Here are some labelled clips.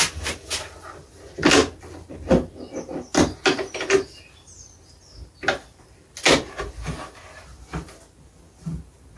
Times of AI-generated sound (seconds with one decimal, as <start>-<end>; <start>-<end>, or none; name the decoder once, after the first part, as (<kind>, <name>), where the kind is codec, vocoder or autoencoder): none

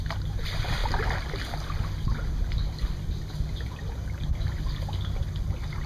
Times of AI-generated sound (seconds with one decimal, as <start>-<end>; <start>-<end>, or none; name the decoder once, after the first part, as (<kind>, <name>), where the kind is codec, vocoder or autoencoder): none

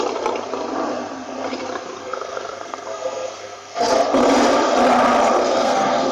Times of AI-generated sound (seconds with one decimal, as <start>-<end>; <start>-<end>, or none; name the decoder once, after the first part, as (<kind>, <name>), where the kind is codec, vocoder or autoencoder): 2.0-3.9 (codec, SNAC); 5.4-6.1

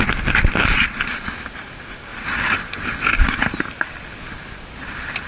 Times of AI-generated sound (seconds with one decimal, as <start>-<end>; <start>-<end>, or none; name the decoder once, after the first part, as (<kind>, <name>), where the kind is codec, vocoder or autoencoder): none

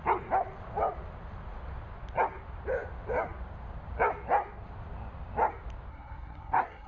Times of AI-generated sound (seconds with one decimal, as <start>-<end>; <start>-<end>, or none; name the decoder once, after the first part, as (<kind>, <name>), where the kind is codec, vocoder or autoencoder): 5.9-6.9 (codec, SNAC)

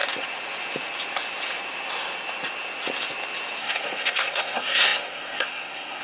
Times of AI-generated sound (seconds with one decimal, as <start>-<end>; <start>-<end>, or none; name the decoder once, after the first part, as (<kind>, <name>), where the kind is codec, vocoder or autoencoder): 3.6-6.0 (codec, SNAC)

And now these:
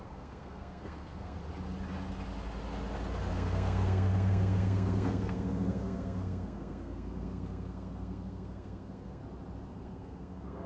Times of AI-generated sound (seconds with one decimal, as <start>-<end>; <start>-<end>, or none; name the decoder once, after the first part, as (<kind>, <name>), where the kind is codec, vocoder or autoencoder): 0.0-1.4 (codec, SNAC); 3.3-9.2; 9.7-10.7